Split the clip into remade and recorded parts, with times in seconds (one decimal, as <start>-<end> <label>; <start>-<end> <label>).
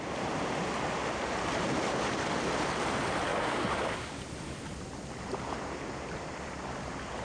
0.0-3.3 recorded; 3.3-4.2 remade; 4.2-7.2 recorded